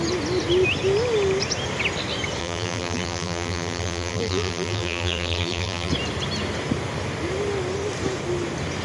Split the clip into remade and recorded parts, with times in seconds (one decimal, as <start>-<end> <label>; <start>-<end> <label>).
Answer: 0.0-2.4 recorded; 2.4-5.9 remade; 5.9-8.8 recorded